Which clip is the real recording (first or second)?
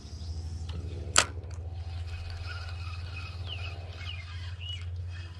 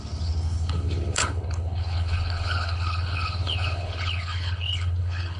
first